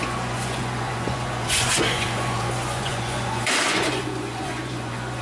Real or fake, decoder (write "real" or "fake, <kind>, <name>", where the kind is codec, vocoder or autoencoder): fake, vocoder, Vocos